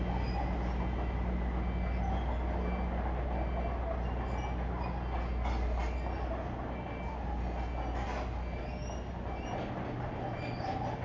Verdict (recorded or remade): recorded